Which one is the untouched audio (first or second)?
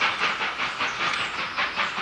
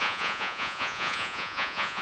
first